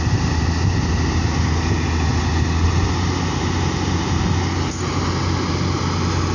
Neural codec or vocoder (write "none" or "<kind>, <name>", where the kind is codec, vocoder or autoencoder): none